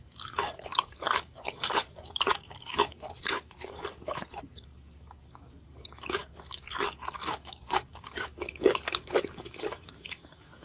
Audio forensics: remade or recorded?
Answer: remade